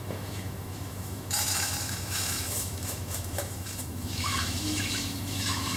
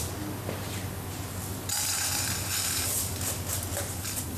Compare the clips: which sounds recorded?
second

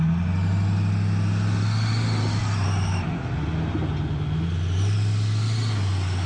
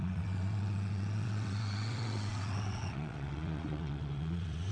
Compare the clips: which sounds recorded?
first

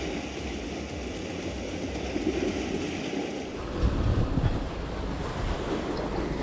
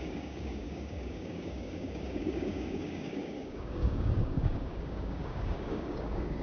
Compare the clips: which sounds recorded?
first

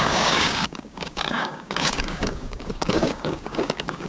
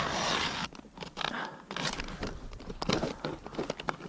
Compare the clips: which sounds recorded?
second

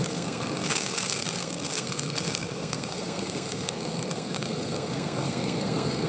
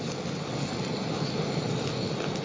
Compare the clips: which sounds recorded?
second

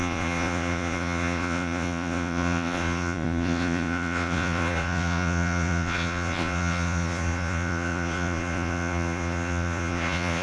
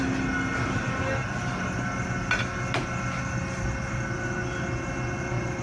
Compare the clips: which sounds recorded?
second